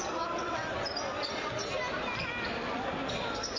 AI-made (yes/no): no